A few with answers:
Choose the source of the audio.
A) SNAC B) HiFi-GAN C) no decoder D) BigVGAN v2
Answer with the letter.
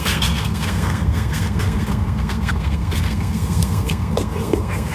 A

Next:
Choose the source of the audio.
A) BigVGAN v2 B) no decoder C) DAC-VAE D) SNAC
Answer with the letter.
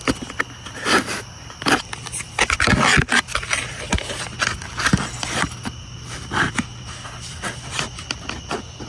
B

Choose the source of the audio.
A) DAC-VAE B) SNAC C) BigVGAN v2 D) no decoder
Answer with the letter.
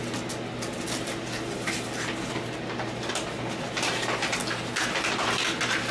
D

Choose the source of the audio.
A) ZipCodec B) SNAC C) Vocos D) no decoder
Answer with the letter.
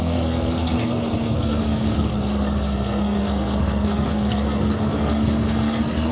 B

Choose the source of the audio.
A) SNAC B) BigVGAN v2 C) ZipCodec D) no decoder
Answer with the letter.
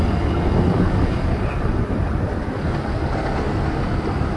D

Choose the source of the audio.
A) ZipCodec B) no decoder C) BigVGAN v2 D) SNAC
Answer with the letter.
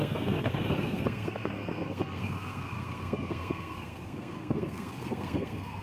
D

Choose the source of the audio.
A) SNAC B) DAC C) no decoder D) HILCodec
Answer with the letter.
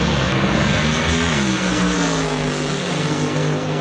A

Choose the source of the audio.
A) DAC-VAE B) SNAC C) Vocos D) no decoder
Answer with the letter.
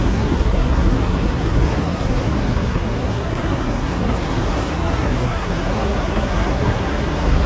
B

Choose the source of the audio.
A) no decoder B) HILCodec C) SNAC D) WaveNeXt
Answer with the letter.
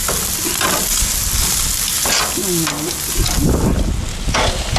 A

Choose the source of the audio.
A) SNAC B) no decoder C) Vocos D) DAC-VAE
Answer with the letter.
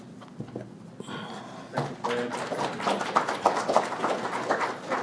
B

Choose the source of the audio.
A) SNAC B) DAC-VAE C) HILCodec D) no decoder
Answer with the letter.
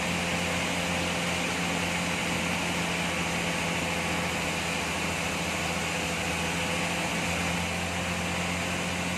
D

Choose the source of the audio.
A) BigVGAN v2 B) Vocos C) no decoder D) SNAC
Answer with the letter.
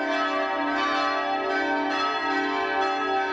C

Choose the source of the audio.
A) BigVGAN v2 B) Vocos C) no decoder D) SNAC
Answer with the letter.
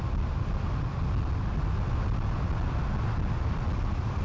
C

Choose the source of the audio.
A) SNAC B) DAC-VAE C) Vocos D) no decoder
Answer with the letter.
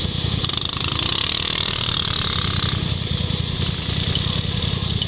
D